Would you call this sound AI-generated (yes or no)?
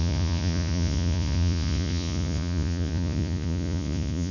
yes